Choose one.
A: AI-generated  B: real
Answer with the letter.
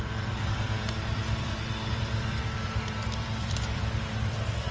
A